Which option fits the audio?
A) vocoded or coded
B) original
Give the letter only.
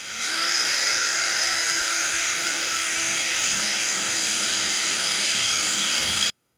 A